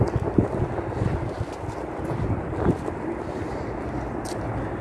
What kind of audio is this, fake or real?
real